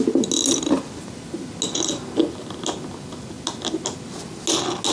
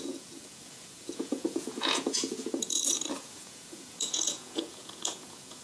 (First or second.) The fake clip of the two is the second